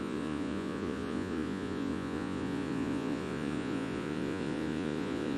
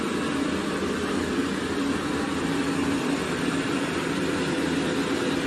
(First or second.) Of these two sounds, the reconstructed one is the first